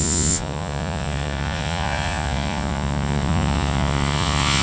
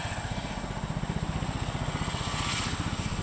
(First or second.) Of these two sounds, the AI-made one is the first